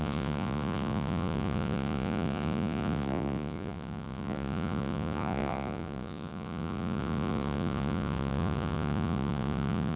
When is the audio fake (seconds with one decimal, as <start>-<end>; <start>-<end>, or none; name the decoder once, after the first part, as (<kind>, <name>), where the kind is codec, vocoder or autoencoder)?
0.0-10.0 (vocoder, Vocos)